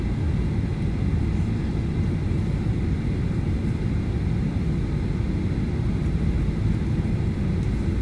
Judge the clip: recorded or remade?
recorded